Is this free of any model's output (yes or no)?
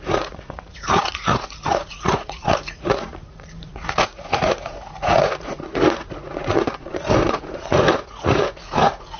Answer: no